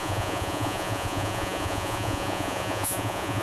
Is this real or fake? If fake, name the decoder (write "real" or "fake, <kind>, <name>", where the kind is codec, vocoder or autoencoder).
fake, vocoder, Vocos